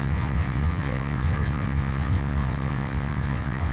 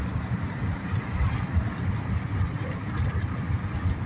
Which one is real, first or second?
second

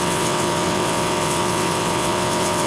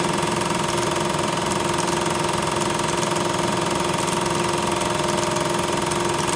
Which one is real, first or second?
second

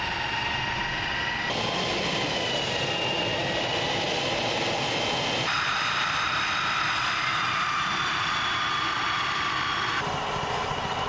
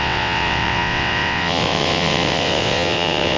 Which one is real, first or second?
first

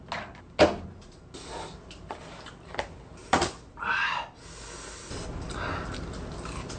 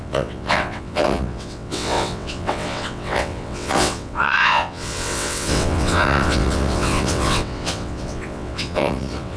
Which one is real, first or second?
first